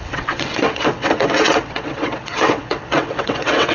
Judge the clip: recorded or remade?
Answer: remade